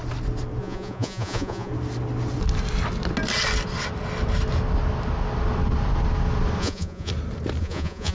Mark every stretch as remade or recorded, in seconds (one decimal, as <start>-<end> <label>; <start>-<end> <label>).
0.0-0.6 recorded; 0.6-1.7 remade; 1.7-6.6 recorded; 6.6-7.1 remade; 7.1-7.6 recorded; 7.6-8.1 remade